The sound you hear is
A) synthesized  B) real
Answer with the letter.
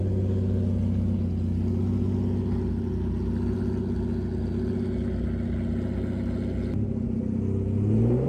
B